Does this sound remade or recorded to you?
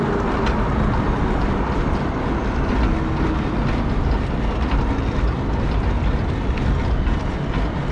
recorded